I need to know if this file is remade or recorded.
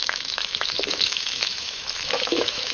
remade